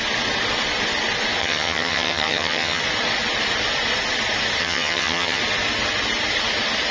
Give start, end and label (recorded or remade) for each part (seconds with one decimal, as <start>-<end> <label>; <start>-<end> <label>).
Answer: 0.0-1.4 recorded; 1.4-2.8 remade; 2.8-4.6 recorded; 4.6-5.4 remade; 5.4-6.9 recorded